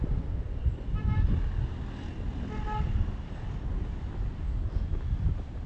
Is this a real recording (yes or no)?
yes